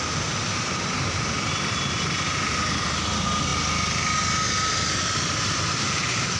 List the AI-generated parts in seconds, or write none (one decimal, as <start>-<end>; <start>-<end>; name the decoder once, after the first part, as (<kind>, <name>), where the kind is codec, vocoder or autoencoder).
none